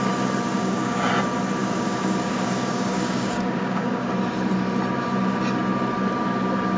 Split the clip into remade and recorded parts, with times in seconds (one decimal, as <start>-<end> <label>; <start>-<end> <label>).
0.0-0.5 recorded; 0.5-1.1 remade; 1.1-1.6 recorded; 1.6-4.1 remade; 4.1-6.8 recorded